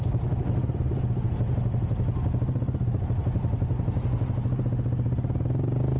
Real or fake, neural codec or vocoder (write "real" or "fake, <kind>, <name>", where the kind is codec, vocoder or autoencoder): real